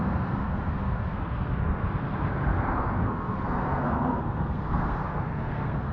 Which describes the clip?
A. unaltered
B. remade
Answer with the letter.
B